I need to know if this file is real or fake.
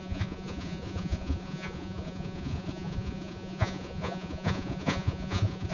fake